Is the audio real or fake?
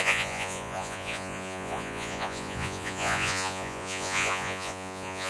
fake